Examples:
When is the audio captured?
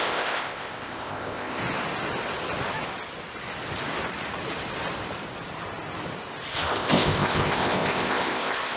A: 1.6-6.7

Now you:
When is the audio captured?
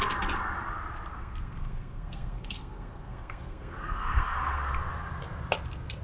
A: 0.0-1.1; 4.7-6.0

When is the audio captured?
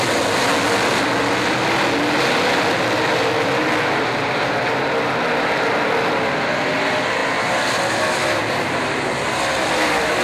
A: 0.0-10.2